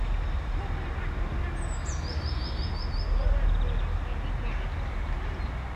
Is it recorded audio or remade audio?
recorded